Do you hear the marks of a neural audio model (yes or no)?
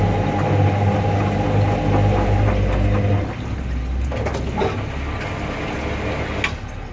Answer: no